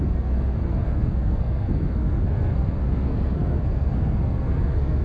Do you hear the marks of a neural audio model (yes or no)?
yes